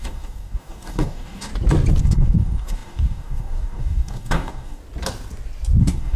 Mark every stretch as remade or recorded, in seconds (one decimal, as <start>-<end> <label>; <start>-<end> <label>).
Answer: 0.0-1.5 remade; 1.5-2.0 recorded; 2.0-4.8 remade; 4.8-5.8 recorded; 5.8-6.2 remade